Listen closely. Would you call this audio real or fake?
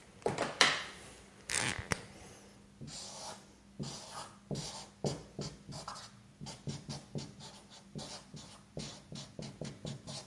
real